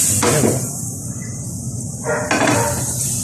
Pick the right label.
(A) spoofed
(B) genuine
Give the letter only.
B